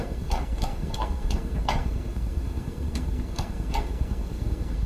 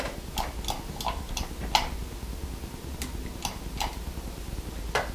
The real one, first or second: second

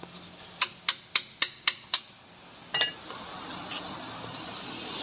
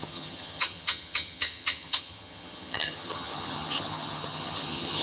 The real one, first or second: first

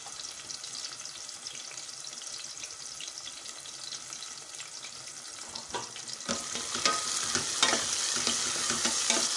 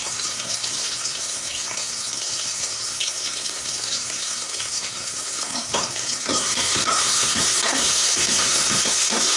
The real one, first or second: first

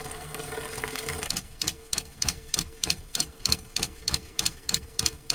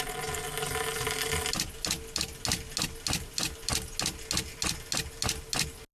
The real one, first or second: second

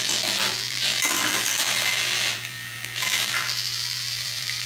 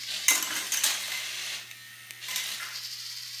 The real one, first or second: second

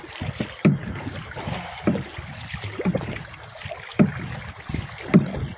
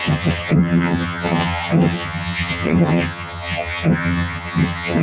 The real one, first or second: first